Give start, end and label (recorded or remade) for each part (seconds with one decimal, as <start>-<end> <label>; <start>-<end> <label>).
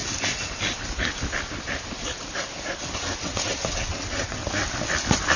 0.0-3.2 recorded; 3.2-4.4 remade; 4.4-5.4 recorded